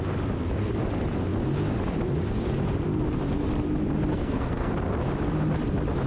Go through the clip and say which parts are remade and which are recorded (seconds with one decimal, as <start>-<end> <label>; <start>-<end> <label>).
0.0-4.1 recorded; 4.1-4.7 remade; 4.7-6.1 recorded